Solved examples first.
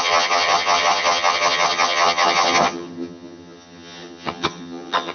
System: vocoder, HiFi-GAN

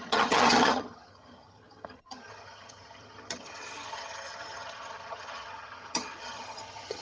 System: vocoder, HiFi-GAN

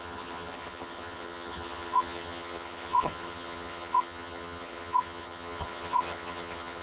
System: vocoder, HiFi-GAN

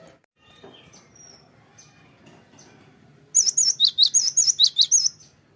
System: none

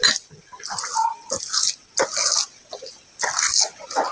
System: none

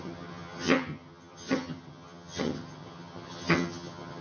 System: vocoder, HiFi-GAN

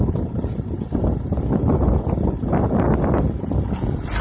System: none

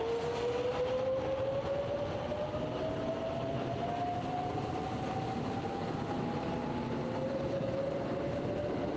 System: none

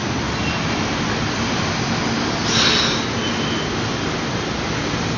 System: none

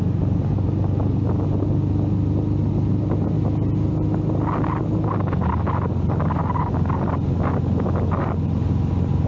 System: none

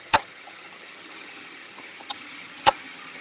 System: vocoder, HiFi-GAN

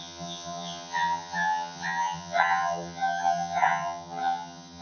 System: vocoder, HiFi-GAN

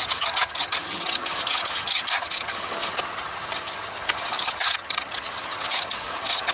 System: vocoder, HiFi-GAN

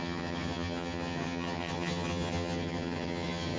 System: vocoder, HiFi-GAN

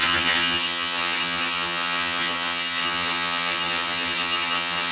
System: vocoder, HiFi-GAN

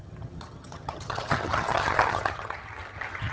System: vocoder, HiFi-GAN